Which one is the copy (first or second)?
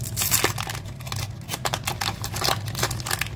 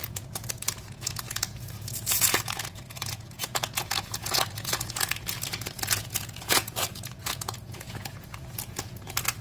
second